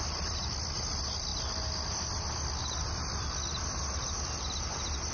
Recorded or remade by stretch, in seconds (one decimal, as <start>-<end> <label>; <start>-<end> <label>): 0.0-5.1 recorded